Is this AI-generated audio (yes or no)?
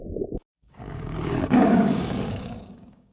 yes